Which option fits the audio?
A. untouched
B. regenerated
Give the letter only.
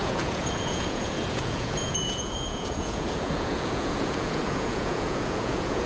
B